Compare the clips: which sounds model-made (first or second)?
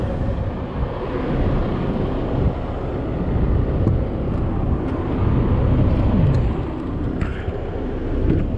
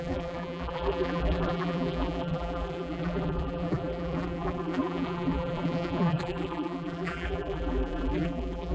second